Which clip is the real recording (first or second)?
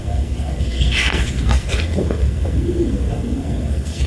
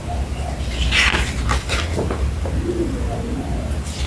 second